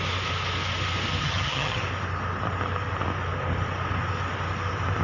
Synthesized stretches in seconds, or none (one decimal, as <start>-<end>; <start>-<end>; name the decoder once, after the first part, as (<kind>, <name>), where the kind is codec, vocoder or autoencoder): 1.2-1.8 (vocoder, HiFi-GAN)